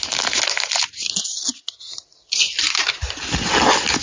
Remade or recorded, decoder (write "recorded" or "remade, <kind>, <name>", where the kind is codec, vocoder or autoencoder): recorded